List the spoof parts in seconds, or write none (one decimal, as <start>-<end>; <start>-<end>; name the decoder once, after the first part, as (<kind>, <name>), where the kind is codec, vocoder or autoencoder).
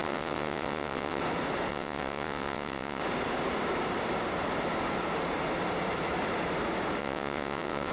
0.0-1.2 (vocoder, WaveNeXt); 1.7-3.0; 7.0-7.9